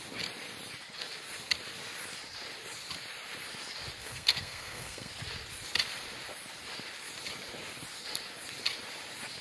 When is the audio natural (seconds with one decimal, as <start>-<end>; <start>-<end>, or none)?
0.0-4.0; 5.1-9.4